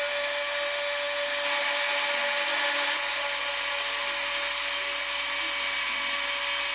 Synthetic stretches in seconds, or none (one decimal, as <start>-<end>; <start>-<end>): none